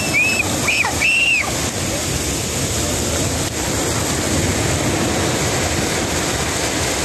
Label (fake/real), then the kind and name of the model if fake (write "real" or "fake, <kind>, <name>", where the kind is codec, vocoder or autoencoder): real